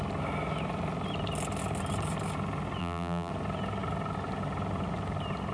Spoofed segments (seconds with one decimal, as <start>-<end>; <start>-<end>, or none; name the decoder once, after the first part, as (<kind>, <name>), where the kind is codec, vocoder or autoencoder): 2.8-3.3 (vocoder, BigVGAN v2)